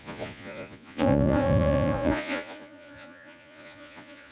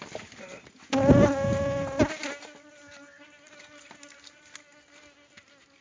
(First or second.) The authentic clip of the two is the second